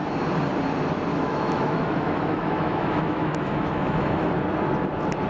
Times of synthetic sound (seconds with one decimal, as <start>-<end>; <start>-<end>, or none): 1.1-4.3